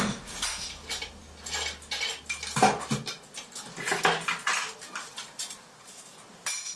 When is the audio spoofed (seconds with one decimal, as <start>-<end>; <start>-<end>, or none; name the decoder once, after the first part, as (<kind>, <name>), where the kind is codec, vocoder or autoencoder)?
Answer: none